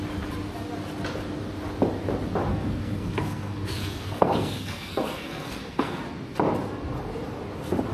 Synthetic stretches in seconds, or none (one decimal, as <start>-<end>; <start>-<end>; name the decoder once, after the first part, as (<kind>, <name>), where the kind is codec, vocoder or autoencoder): 2.5-6.0 (codec, SNAC)